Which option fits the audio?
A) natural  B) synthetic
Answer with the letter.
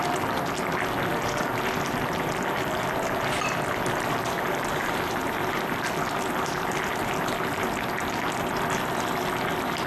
A